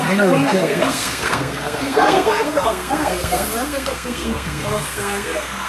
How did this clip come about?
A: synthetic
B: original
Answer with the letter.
A